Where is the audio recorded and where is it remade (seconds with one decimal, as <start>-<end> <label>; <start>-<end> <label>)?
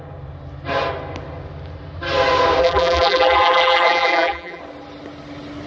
0.0-2.6 recorded; 2.6-4.6 remade; 4.6-5.7 recorded